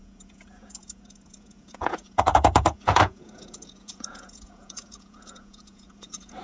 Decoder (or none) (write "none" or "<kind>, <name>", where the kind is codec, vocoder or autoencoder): vocoder, Vocos